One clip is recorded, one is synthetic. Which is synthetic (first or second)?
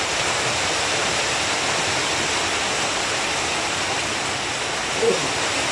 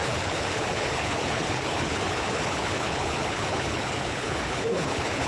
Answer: second